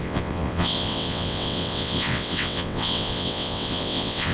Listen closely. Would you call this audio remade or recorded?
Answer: remade